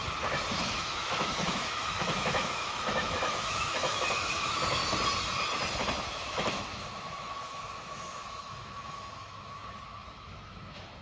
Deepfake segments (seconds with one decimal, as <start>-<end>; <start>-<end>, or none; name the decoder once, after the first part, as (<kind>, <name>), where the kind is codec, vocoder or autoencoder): 0.5-4.8 (autoencoder, DAC-VAE); 6.1-11.0